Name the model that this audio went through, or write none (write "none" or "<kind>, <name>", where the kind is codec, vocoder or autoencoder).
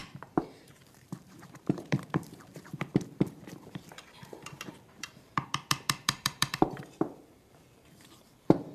vocoder, BigVGAN v2